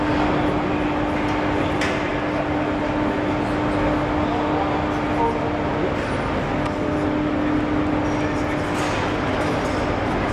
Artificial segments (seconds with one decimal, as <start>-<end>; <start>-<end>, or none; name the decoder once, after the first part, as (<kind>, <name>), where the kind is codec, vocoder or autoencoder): none